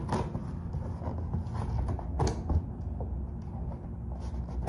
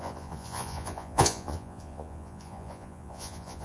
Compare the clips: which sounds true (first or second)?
first